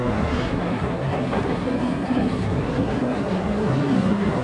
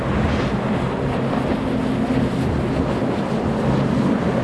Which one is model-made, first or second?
first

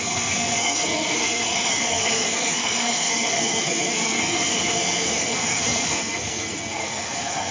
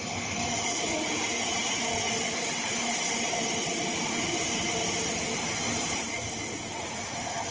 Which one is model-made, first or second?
first